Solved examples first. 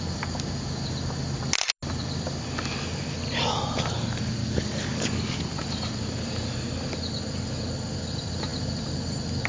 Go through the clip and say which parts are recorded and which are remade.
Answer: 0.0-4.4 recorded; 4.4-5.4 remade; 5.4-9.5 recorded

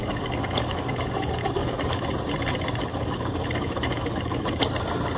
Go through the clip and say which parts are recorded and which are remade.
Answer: 0.0-2.0 remade; 2.0-2.9 recorded; 2.9-4.6 remade; 4.6-5.2 recorded

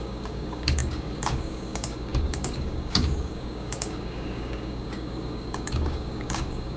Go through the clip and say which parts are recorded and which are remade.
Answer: 0.0-6.8 remade